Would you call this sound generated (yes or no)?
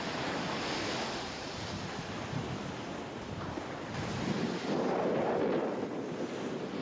no